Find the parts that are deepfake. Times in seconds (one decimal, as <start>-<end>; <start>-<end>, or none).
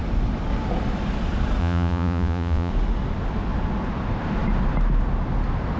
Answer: 1.6-2.7